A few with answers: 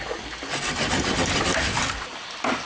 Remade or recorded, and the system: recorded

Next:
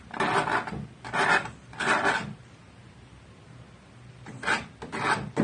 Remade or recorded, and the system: recorded